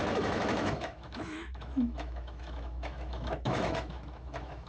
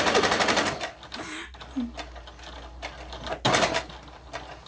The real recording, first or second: second